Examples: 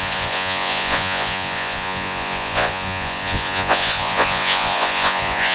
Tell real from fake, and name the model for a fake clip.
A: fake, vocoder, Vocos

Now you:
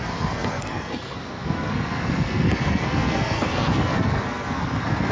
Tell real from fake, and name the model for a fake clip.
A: fake, codec, SNAC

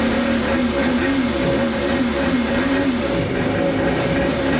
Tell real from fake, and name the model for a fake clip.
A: real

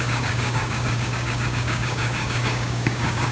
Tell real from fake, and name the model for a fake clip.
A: fake, codec, DAC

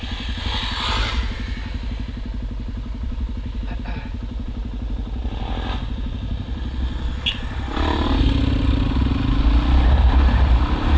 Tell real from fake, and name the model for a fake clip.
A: real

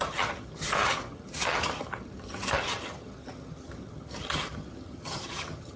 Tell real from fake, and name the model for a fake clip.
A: fake, vocoder, HiFi-GAN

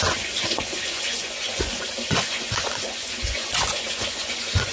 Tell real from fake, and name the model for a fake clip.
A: fake, vocoder, Vocos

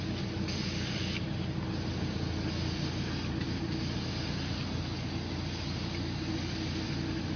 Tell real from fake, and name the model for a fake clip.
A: real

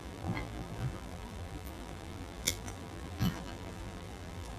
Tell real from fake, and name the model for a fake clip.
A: fake, vocoder, BigVGAN v2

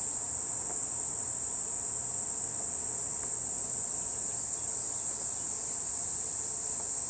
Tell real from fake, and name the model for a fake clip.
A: real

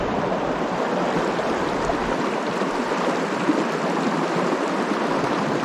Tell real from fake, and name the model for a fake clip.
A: real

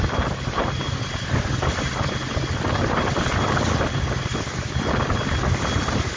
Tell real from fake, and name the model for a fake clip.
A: real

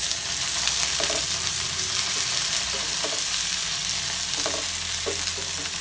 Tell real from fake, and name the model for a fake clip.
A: real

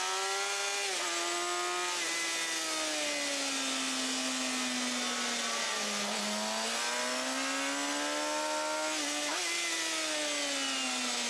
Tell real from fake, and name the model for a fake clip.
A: real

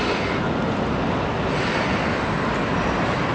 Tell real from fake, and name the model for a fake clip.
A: real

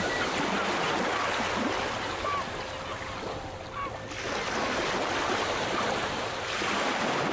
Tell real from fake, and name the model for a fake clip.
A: real